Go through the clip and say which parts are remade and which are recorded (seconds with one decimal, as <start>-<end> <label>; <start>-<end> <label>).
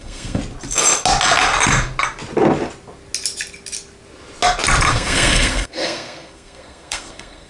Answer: 0.0-0.4 remade; 0.4-4.9 recorded; 4.9-7.5 remade